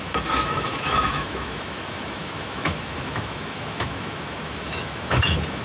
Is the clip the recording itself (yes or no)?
no